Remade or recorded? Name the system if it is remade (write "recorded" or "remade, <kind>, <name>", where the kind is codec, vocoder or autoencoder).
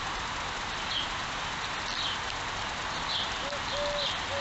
recorded